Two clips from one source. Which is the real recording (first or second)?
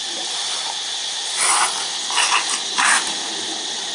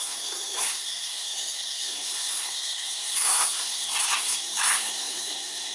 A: first